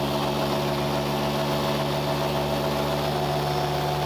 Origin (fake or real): real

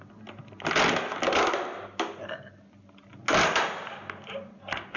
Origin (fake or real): real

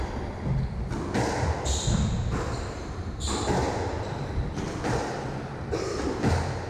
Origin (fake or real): real